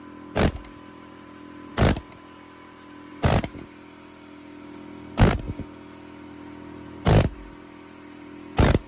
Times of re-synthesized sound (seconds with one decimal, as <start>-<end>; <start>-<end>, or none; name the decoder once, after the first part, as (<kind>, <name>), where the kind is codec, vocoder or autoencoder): none

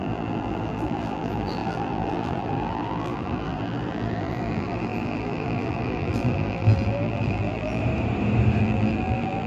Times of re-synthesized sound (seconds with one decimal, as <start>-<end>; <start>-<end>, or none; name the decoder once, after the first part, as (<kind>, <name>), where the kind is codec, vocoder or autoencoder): 0.0-7.8 (vocoder, BigVGAN v2); 8.6-9.5

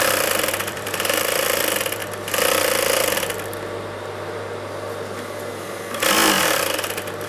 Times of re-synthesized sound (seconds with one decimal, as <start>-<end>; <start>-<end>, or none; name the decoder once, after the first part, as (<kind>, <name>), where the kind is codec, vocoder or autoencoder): 0.6-1.6 (vocoder, BigVGAN v2)